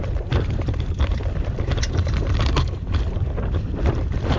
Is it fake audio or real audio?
fake